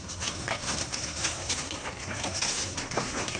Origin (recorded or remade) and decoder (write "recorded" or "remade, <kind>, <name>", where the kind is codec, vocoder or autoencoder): remade, codec, SNAC